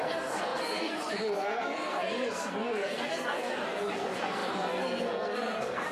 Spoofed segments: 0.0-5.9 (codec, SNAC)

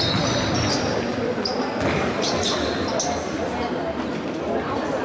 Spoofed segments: none

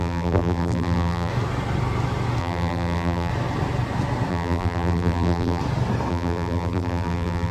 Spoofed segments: 0.0-1.3 (vocoder, BigVGAN v2); 2.4-3.3; 4.3-5.6; 6.1-7.5

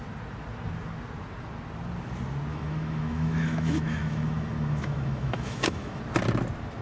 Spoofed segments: 2.5-6.0 (autoencoder, DAC-VAE)

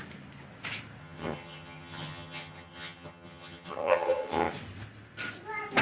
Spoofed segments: 1.0-4.5 (vocoder, HiFi-GAN)

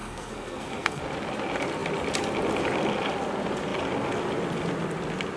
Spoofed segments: 0.0-1.0 (codec, SNAC)